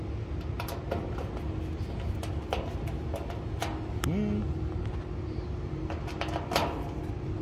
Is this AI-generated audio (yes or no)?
no